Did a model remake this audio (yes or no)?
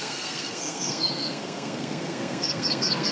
yes